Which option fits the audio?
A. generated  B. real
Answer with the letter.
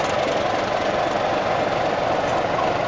B